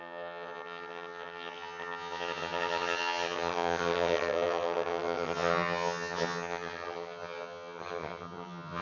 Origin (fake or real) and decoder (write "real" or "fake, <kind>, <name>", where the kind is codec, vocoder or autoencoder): fake, vocoder, HiFi-GAN